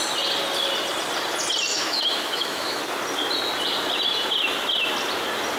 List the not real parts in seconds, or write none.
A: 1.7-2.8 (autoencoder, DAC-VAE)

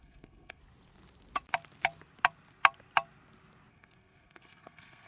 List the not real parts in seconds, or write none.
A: 0.0-0.6 (codec, SNAC); 3.7-5.1

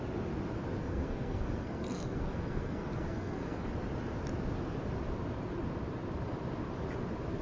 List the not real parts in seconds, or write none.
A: 0.8-3.7 (codec, SNAC)

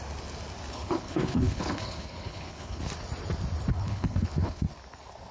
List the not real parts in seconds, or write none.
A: 0.7-2.8 (codec, HILCodec); 3.7-4.7

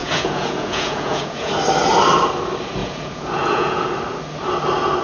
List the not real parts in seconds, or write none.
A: 0.0-1.5 (vocoder, Vocos); 2.8-3.9

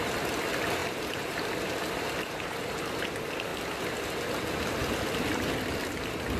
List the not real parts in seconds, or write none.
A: 0.8-2.4 (vocoder, BigVGAN v2); 3.5-4.2; 4.8-5.9

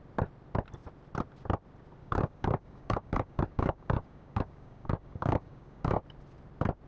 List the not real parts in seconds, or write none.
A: 2.0-6.0 (codec, DAC)